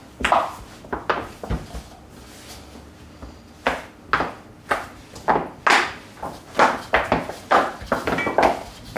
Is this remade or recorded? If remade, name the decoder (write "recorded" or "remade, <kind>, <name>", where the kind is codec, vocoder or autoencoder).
recorded